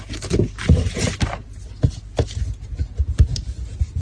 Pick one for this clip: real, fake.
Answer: real